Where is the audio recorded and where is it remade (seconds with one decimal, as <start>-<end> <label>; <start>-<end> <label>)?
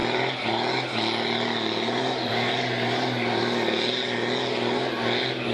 0.0-5.5 recorded